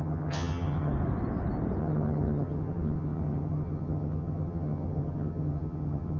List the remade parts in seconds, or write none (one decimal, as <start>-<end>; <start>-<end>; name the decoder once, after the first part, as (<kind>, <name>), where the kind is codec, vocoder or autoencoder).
0.0-0.9 (vocoder, HiFi-GAN); 1.8-6.2